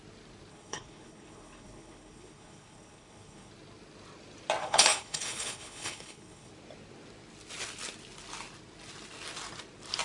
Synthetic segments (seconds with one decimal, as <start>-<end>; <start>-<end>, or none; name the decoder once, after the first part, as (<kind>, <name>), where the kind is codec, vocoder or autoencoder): 0.5-3.5 (codec, HILCodec); 4.6-6.5